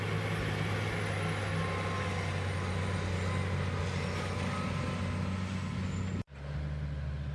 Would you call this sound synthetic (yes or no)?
no